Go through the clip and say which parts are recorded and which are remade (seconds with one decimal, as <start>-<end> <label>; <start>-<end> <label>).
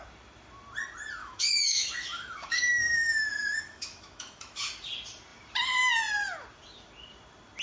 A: 0.0-1.2 recorded; 1.2-4.7 remade; 4.7-7.6 recorded